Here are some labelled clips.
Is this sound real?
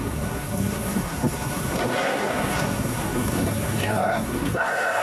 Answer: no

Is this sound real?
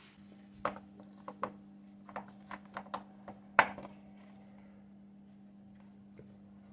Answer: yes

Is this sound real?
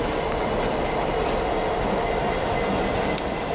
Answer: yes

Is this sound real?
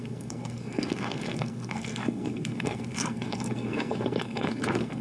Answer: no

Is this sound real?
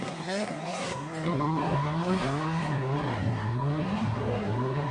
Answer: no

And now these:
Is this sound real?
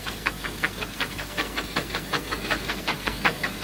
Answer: no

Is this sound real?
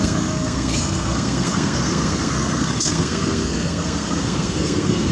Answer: no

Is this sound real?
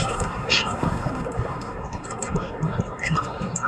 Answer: no